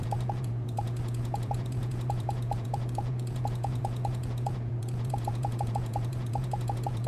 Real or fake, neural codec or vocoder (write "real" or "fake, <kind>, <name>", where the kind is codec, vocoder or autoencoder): fake, vocoder, Vocos